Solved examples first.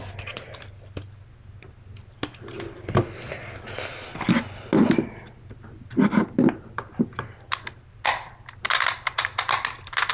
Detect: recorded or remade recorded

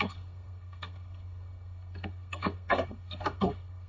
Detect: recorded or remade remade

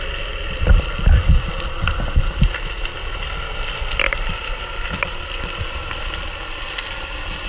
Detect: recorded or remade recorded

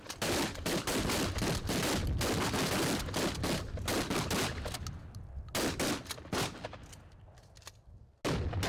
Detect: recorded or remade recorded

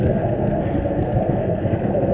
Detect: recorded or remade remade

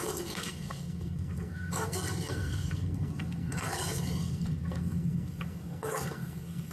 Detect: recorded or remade remade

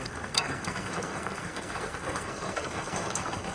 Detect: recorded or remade remade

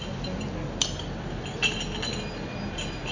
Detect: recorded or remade recorded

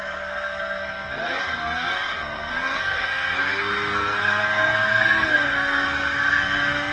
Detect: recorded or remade remade